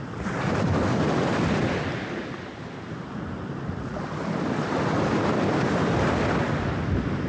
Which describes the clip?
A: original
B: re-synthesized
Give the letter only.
A